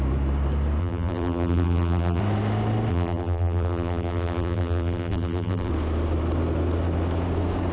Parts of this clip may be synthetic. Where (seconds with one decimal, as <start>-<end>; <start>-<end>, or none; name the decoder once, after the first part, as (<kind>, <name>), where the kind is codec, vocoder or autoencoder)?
0.8-2.2 (vocoder, BigVGAN v2); 2.9-5.7